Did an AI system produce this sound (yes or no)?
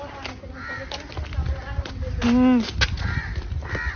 no